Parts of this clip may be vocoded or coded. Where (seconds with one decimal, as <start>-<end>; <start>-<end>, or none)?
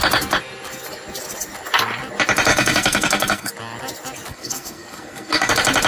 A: 2.5-3.5; 4.3-5.5